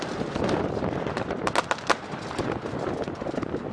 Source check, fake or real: real